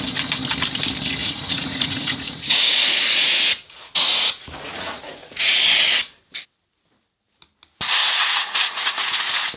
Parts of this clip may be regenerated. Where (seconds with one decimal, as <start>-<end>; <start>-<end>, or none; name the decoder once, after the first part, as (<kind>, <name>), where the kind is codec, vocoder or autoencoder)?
1.2-5.5 (vocoder, Vocos); 8.0-9.6

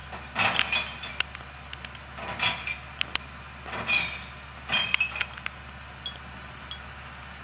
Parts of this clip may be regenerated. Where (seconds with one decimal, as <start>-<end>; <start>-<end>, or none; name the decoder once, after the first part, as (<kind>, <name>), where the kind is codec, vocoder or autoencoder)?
none

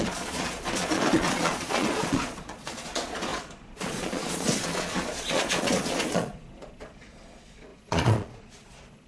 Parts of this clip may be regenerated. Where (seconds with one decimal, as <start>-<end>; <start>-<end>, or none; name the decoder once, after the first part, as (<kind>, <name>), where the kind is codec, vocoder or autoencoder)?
0.0-9.1 (vocoder, Vocos)